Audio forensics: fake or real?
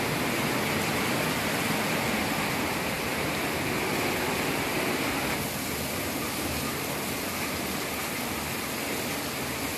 real